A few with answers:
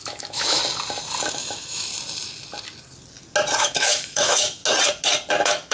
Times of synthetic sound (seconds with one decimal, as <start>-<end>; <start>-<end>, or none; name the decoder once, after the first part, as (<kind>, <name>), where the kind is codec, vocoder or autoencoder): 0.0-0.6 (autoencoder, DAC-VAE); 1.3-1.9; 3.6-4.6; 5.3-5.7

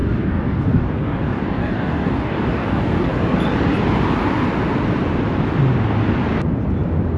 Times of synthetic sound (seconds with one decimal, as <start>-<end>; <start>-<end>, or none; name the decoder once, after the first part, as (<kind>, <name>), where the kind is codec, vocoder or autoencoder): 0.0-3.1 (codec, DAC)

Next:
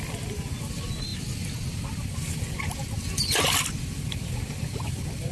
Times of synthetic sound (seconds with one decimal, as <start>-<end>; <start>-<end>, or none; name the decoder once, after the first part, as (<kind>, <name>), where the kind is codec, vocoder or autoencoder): none

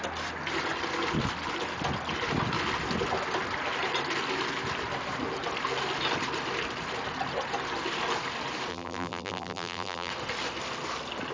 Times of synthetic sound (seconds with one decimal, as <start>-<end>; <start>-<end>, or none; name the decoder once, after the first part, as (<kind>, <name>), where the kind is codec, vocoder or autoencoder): 8.7-10.1 (vocoder, BigVGAN v2)